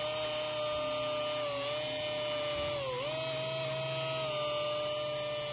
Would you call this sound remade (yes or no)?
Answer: no